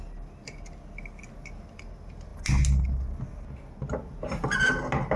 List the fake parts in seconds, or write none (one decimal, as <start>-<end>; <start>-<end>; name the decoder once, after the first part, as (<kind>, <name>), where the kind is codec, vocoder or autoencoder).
none